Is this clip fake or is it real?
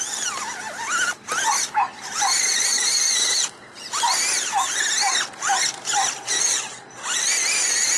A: real